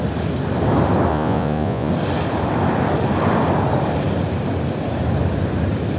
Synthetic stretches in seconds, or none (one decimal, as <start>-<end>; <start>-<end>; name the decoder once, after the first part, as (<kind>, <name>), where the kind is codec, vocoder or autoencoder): 1.1-1.9 (vocoder, Vocos)